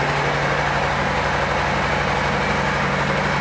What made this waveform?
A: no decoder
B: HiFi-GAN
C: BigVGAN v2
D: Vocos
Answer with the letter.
A